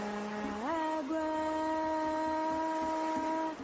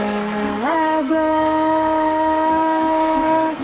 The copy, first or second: second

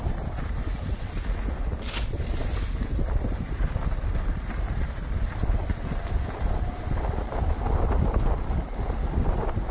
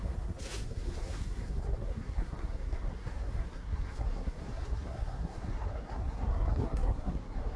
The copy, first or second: second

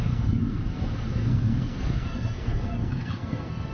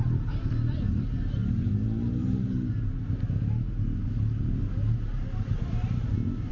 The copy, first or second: first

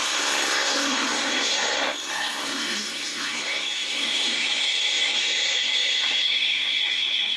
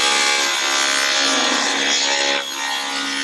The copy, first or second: first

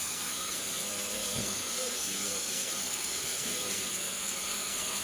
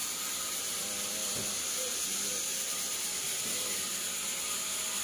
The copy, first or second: first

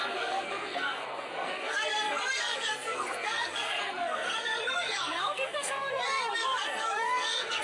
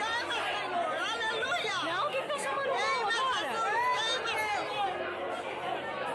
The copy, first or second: first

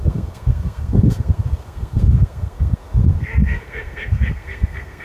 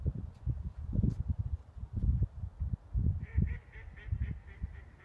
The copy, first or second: first